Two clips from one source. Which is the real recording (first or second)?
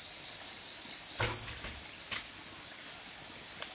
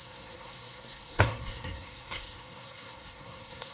first